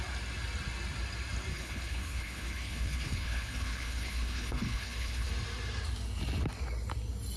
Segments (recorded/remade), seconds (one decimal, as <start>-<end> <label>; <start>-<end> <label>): 0.0-1.5 recorded; 1.5-5.3 remade; 5.3-7.4 recorded